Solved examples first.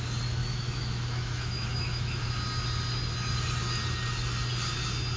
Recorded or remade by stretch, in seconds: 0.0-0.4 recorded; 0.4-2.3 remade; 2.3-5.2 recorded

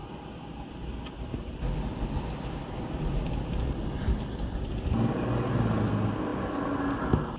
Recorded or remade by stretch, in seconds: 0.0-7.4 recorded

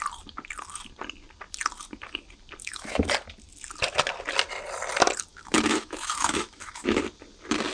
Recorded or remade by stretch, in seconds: 0.0-2.6 recorded; 2.6-3.1 remade; 3.1-5.3 recorded; 5.3-7.0 remade; 7.0-7.7 recorded

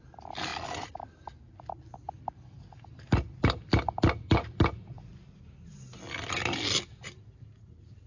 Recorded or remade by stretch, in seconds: 0.0-8.1 recorded